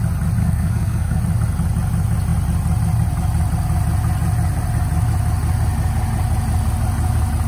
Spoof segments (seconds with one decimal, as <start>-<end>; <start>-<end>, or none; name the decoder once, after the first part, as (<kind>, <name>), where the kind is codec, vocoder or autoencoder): 0.4-1.2 (codec, SNAC)